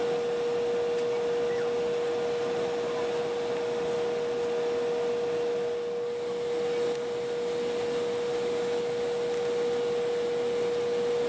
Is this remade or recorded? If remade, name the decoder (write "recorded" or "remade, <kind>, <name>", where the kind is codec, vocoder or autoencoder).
recorded